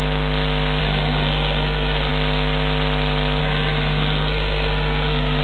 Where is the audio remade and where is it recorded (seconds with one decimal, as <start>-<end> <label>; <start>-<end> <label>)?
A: 0.0-0.8 recorded; 0.8-2.1 remade; 2.1-3.4 recorded; 3.4-5.4 remade